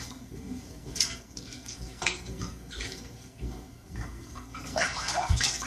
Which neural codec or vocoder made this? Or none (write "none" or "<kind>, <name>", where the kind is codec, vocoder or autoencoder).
codec, SNAC